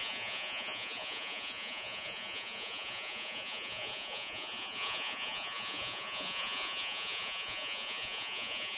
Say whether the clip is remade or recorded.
remade